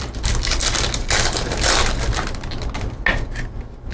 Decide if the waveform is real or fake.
real